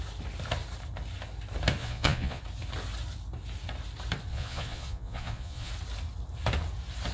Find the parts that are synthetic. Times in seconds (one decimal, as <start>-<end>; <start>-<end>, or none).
1.8-2.4; 4.3-5.7